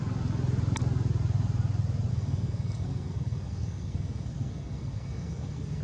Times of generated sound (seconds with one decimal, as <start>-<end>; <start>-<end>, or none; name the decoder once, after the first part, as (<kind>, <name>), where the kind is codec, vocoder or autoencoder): 2.1-5.8 (codec, SNAC)